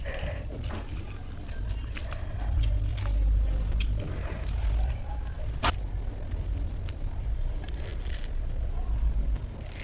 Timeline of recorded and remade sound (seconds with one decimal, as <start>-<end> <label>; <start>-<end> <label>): 0.0-9.8 recorded